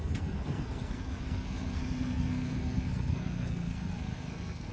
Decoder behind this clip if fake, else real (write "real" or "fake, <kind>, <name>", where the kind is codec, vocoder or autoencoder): fake, codec, SNAC